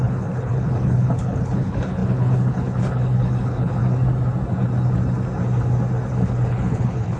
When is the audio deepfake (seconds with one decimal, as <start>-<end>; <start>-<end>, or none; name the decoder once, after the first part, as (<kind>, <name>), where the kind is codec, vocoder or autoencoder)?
0.0-3.8 (codec, HILCodec); 6.1-7.2